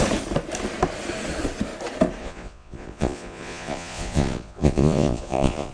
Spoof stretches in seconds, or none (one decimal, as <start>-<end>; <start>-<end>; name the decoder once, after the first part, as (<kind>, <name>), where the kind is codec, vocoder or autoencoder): 2.2-5.7 (vocoder, Vocos)